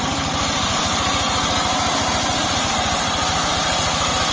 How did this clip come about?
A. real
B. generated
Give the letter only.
A